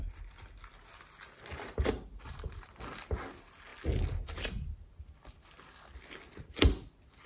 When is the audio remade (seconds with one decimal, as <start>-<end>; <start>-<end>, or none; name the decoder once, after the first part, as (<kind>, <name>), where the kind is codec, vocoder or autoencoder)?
1.5-2.7 (vocoder, BigVGAN v2)